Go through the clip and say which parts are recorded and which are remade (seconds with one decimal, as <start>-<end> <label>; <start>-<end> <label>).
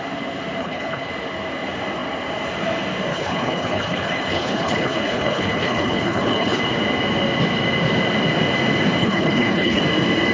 0.0-0.6 recorded; 0.6-1.1 remade; 1.1-3.1 recorded; 3.1-6.6 remade; 6.6-9.0 recorded; 9.0-9.8 remade; 9.8-10.3 recorded